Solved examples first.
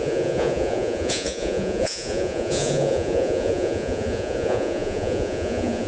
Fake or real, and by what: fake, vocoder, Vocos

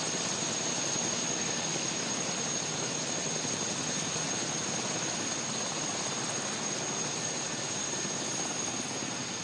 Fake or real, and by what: real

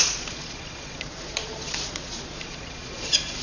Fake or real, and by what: fake, vocoder, Vocos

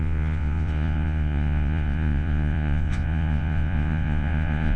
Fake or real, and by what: fake, vocoder, Vocos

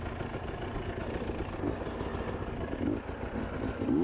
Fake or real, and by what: real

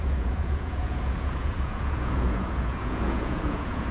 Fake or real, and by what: fake, vocoder, Vocos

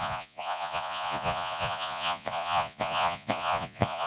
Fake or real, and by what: fake, vocoder, Vocos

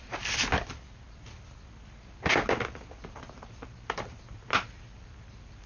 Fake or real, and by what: real